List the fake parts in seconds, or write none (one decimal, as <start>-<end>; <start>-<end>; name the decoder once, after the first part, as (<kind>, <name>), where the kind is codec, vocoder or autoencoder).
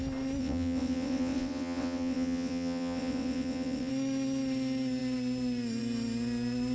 0.4-3.9 (vocoder, WaveNeXt)